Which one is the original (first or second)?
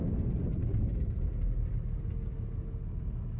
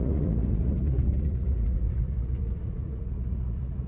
first